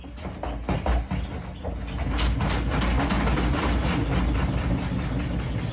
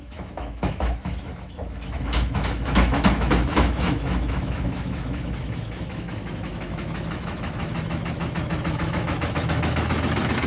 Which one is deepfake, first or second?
second